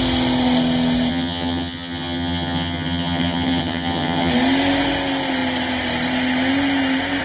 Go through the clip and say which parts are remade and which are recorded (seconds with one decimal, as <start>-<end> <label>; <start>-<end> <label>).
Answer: 0.0-1.1 recorded; 1.1-4.3 remade; 4.3-7.2 recorded